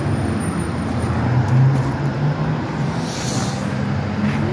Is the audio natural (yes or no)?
yes